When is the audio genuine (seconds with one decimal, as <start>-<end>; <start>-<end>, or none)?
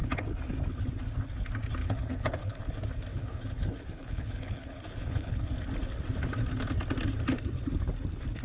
0.0-1.8; 2.6-3.1; 5.4-8.4